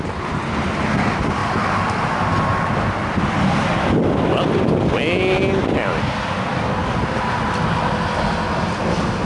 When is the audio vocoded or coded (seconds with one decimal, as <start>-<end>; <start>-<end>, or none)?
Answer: none